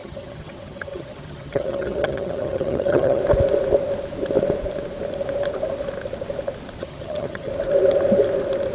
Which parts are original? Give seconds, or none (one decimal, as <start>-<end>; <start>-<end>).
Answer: 3.2-6.8; 7.5-8.7